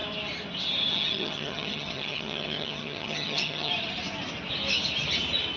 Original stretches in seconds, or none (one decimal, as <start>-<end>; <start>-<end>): 0.0-0.9; 3.7-5.6